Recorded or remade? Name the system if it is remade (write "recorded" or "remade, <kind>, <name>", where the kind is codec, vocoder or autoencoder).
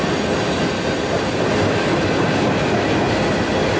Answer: recorded